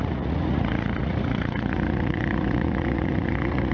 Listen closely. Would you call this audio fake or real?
fake